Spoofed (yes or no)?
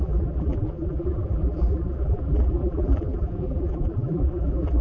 yes